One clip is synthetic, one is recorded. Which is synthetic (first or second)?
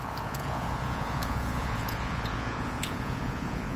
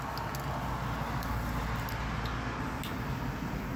first